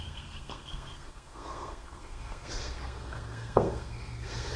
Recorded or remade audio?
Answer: remade